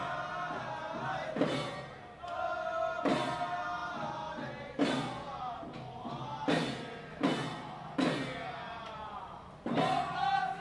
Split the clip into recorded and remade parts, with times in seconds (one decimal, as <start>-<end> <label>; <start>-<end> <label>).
0.0-10.6 recorded

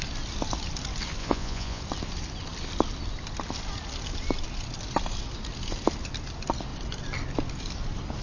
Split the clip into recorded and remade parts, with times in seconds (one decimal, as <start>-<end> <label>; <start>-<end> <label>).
0.0-1.2 recorded; 1.2-1.8 remade; 1.8-8.2 recorded

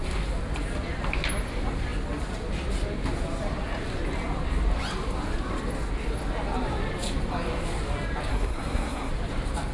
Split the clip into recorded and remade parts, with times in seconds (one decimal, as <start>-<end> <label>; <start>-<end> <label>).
0.0-8.3 recorded; 8.3-9.1 remade; 9.1-9.7 recorded

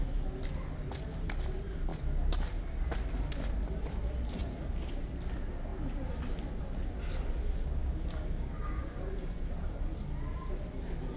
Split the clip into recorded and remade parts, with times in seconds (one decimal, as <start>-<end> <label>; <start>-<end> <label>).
0.0-7.8 recorded; 7.8-9.0 remade; 9.0-11.2 recorded